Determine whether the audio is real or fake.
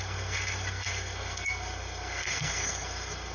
fake